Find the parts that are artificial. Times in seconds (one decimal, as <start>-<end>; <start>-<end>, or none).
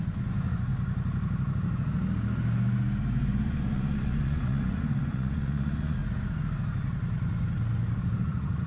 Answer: 0.0-0.7; 3.1-6.0; 8.0-8.7